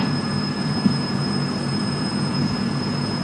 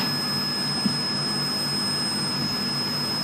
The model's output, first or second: first